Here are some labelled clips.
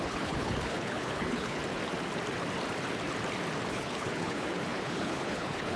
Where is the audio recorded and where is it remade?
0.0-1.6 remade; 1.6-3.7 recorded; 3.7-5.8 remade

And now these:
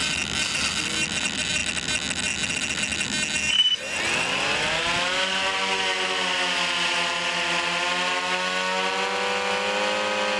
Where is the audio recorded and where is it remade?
0.0-10.4 recorded

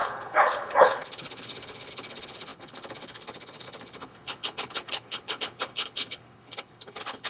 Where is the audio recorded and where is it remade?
0.0-7.3 remade

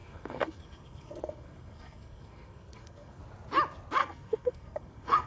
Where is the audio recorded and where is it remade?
0.0-3.2 remade; 3.2-4.0 recorded; 4.0-5.3 remade

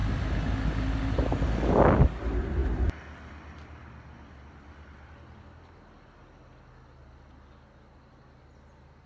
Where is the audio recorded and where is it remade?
0.0-9.1 recorded

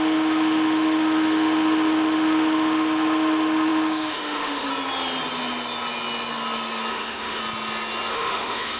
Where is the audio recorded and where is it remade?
0.0-4.7 remade; 4.7-6.9 recorded; 6.9-7.4 remade; 7.4-8.1 recorded; 8.1-8.8 remade